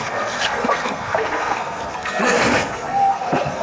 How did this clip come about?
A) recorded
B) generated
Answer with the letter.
B